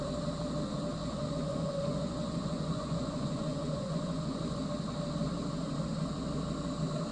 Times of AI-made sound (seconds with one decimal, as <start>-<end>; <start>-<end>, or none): 1.0-4.6